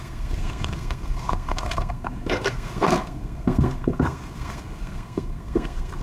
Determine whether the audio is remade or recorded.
remade